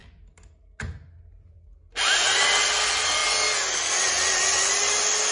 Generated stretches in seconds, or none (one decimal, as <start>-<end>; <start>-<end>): none